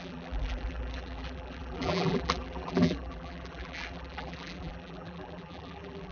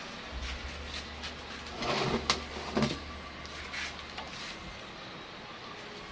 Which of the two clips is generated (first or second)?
first